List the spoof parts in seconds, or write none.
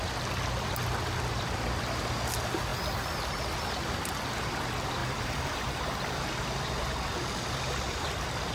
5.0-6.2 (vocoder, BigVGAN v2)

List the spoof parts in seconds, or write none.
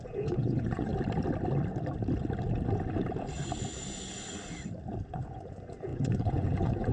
0.0-0.9 (vocoder, Vocos); 5.0-6.9